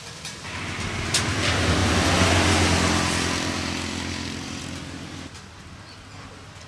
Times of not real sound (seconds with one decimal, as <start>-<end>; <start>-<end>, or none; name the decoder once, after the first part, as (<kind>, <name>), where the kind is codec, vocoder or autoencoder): none